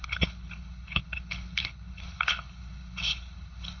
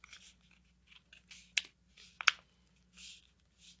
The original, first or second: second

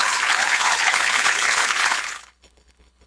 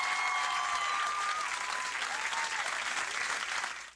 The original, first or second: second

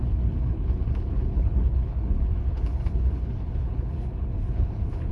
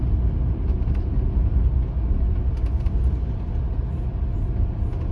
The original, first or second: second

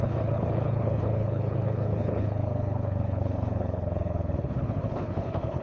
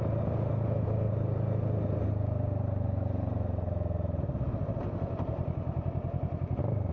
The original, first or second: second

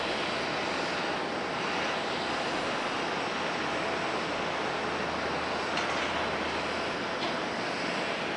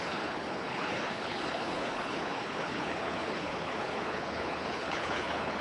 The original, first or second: first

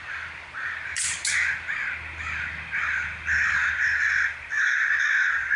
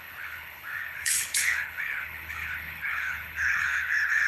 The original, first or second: first